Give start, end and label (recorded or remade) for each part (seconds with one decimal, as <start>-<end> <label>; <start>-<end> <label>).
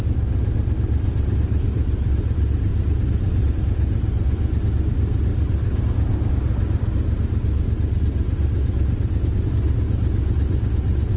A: 0.0-11.2 recorded